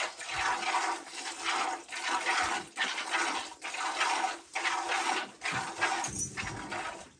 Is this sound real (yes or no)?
yes